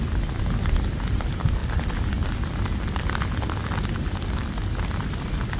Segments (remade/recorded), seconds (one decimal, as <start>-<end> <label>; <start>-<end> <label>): 0.0-5.6 recorded